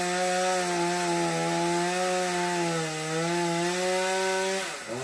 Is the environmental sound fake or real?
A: real